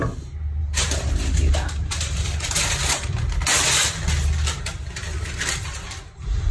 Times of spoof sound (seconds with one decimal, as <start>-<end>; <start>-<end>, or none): 0.6-3.1; 5.1-6.5